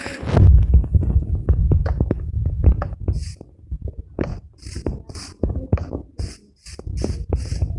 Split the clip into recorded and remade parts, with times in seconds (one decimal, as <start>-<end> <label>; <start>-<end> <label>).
0.0-1.6 recorded; 1.6-3.0 remade; 3.0-4.3 recorded; 4.3-6.3 remade; 6.3-7.8 recorded